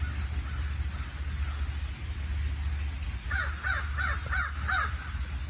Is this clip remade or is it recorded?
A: recorded